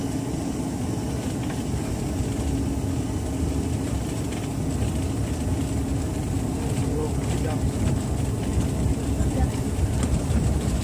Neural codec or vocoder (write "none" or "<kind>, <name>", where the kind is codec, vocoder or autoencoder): none